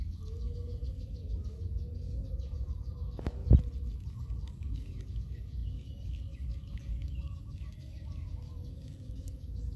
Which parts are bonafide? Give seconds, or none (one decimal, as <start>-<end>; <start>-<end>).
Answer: 3.4-4.1